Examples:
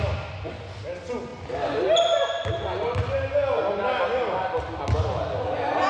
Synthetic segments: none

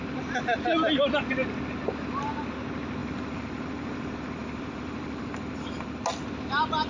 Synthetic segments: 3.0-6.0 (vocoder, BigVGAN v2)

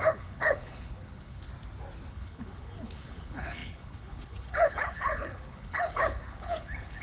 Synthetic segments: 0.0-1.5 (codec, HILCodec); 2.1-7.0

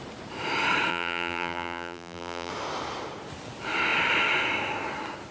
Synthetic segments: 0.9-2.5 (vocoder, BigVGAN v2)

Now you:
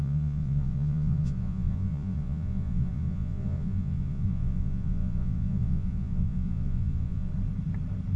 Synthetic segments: 0.0-7.3 (vocoder, Vocos)

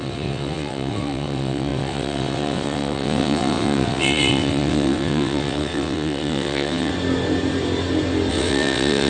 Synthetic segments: 0.0-6.9 (vocoder, WaveNeXt); 8.3-9.1

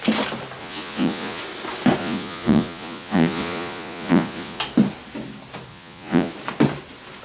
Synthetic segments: 0.6-1.4 (vocoder, Vocos); 2.0-4.6; 5.7-6.3